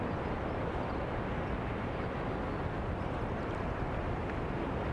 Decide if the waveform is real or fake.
real